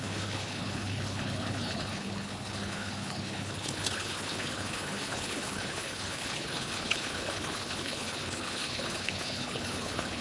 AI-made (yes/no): yes